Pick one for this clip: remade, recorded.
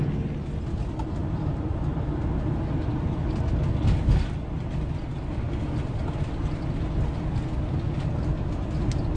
recorded